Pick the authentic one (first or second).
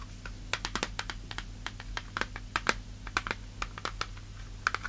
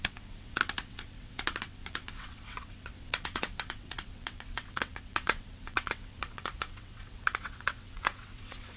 first